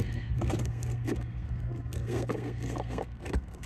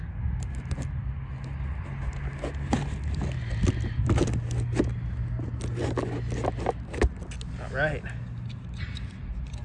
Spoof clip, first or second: first